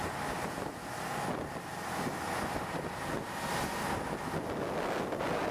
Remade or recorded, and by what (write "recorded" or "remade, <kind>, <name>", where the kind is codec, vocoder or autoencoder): recorded